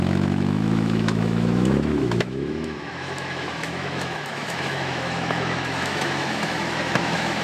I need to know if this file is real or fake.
fake